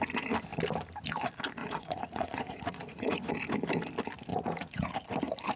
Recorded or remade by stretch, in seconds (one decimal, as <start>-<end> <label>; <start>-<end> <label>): 0.0-1.6 recorded; 1.6-3.3 remade; 3.3-4.3 recorded; 4.3-4.9 remade; 4.9-5.6 recorded